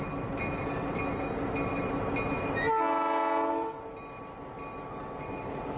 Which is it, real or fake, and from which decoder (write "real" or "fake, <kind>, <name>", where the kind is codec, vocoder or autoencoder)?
real